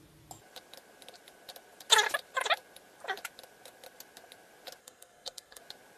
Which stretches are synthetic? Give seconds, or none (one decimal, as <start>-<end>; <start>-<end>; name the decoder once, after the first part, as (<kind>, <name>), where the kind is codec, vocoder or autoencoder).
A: 4.8-5.6 (codec, SNAC)